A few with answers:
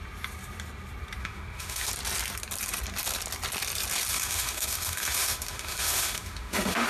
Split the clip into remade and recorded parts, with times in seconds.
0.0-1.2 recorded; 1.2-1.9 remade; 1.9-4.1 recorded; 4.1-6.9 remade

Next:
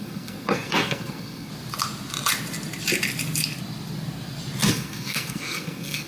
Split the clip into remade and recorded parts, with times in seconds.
0.0-1.5 remade; 1.5-4.7 recorded; 4.7-6.1 remade

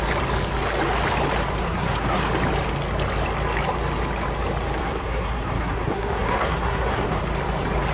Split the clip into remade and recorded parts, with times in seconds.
0.0-1.6 recorded; 1.6-2.2 remade; 2.2-4.8 recorded; 4.8-7.2 remade; 7.2-7.9 recorded

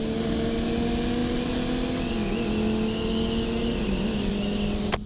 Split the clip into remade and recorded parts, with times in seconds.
0.0-5.1 recorded

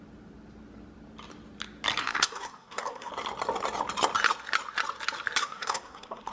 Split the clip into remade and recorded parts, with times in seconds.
0.0-2.0 recorded; 2.0-3.1 remade; 3.1-5.4 recorded; 5.4-6.3 remade

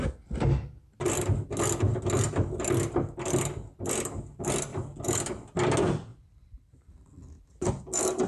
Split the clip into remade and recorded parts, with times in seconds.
0.0-4.7 recorded; 4.7-5.3 remade; 5.3-6.1 recorded; 6.1-7.7 remade; 7.7-8.3 recorded

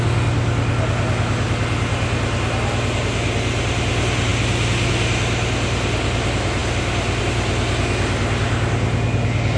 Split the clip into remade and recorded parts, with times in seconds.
0.0-9.6 recorded